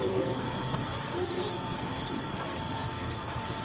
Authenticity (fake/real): fake